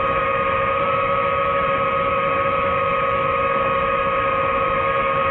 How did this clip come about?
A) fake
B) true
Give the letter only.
A